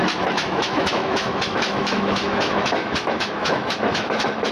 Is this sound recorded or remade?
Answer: remade